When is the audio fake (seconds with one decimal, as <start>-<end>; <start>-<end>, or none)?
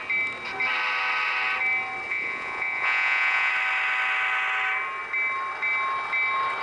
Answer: 2.1-3.5